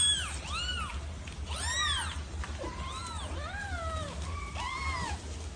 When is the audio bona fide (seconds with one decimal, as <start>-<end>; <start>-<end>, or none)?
0.0-3.6; 5.1-5.6